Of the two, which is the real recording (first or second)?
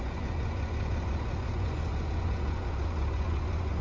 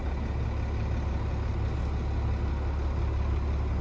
second